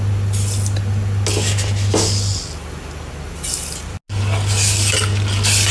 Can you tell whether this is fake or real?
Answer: real